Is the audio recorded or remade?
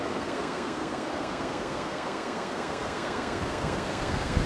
remade